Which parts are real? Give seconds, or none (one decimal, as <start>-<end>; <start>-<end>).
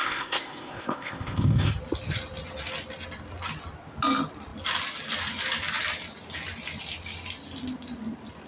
1.7-8.5